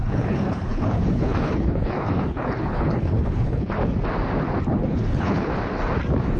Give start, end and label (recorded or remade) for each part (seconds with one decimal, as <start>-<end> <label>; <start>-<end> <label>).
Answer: 0.0-3.8 remade; 3.8-4.7 recorded; 4.7-5.5 remade; 5.5-6.4 recorded